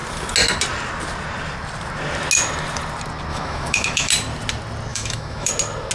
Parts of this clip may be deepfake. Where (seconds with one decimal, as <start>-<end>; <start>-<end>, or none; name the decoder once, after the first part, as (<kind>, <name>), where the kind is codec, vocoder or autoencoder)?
3.3-4.1 (autoencoder, DAC-VAE); 4.9-5.5